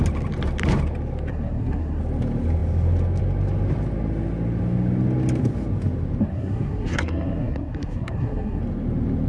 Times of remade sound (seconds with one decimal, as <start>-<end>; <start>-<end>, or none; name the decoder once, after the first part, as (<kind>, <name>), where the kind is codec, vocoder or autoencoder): 1.3-2.0 (codec, SNAC); 6.2-8.6